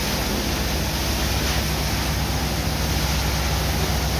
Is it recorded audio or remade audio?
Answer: recorded